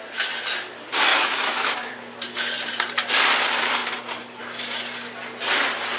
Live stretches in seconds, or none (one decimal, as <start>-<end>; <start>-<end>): 0.0-1.1; 1.9-6.0

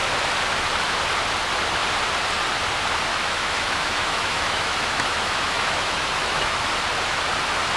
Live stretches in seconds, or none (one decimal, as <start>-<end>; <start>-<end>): 0.0-3.1; 6.7-7.8

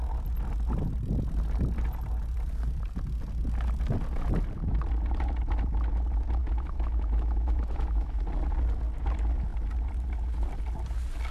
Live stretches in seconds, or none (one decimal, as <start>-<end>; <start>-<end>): 0.0-6.4; 8.2-11.3

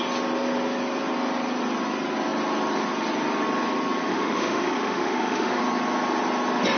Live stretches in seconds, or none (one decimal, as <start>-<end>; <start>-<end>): 0.0-4.1; 5.6-6.8

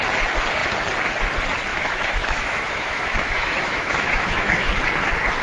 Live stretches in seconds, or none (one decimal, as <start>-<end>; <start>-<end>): 0.0-1.7; 4.7-5.4

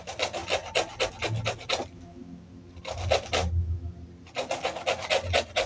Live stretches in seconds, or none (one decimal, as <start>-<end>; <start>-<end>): 0.0-5.7

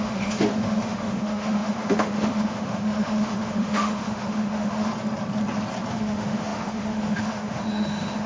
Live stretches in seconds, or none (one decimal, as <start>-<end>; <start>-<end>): 4.9-5.9

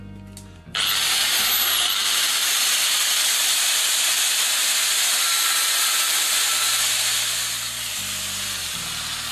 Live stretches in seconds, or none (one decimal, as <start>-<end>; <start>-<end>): 0.0-9.3